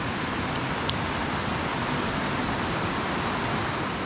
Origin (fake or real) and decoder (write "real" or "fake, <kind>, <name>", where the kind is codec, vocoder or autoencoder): real